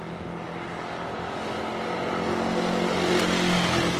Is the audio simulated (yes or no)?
no